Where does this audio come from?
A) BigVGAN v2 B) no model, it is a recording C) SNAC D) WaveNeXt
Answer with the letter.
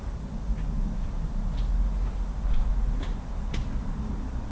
B